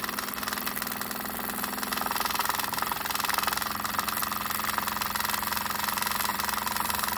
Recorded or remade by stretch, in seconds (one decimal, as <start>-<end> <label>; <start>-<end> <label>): 0.0-2.4 recorded; 2.4-3.0 remade; 3.0-6.3 recorded; 6.3-7.2 remade